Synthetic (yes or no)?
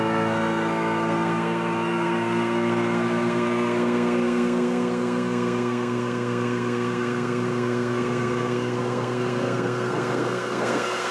yes